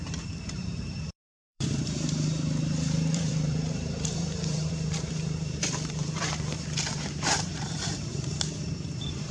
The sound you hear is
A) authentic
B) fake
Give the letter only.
B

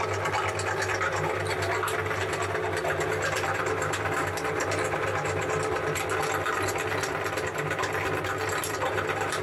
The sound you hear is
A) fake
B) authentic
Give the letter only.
B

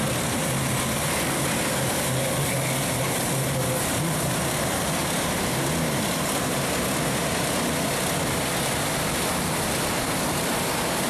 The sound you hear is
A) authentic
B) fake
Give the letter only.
A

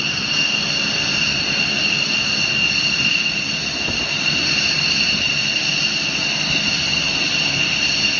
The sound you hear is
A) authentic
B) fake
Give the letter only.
A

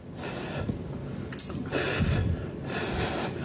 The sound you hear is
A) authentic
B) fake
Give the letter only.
A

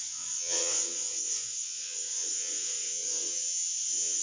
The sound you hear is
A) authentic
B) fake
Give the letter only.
B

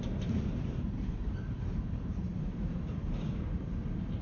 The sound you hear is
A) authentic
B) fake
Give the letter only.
B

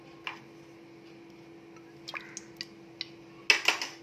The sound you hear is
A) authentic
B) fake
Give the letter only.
A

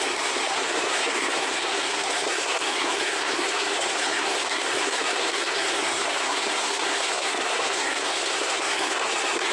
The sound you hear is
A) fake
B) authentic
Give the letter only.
A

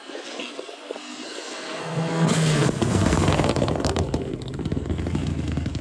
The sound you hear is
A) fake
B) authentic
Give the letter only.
A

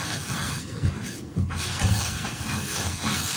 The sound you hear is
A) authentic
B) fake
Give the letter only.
B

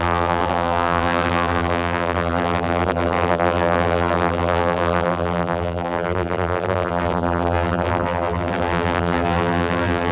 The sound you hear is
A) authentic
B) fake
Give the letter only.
B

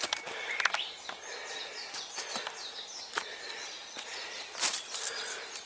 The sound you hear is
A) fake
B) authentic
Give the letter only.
B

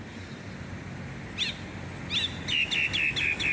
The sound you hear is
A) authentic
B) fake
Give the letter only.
A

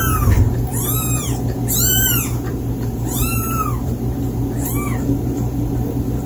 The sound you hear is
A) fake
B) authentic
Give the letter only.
A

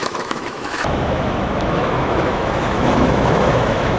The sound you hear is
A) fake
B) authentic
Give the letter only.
A